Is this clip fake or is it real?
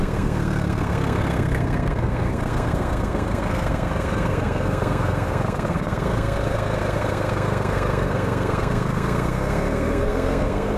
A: fake